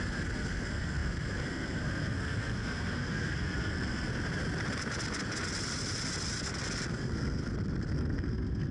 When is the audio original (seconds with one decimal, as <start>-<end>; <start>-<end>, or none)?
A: 4.1-6.9; 7.4-7.9